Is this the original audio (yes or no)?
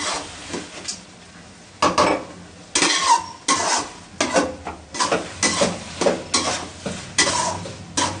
yes